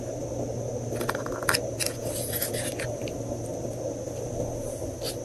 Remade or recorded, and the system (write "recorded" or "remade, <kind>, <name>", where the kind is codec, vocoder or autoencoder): recorded